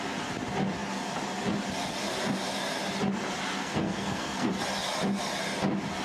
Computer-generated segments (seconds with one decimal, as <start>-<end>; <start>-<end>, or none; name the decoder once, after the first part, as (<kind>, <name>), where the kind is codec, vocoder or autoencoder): 3.6-4.5 (codec, SNAC)